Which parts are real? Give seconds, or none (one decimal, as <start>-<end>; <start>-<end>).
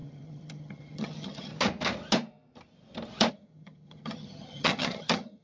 1.5-3.3